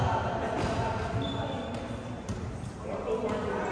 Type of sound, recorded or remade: recorded